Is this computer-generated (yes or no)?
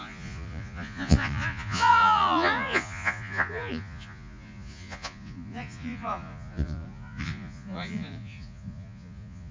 yes